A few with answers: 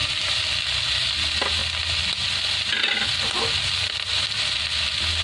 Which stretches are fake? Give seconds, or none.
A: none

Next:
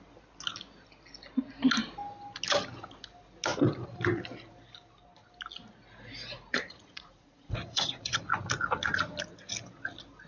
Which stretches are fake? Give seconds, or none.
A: 6.3-8.2 (vocoder, Vocos)

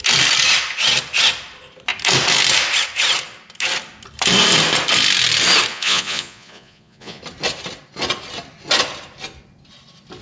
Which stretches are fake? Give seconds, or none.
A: 5.7-7.2 (vocoder, Vocos)

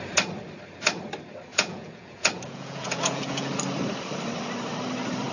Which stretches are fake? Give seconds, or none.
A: 1.5-3.5 (vocoder, Vocos)